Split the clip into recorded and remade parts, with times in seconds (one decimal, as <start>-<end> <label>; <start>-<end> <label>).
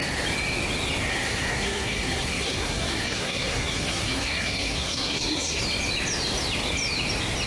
0.0-1.1 recorded; 1.1-5.6 remade; 5.6-7.5 recorded